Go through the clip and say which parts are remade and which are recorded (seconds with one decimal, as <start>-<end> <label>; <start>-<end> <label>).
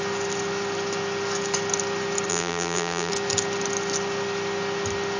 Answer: 0.0-2.3 recorded; 2.3-3.1 remade; 3.1-5.2 recorded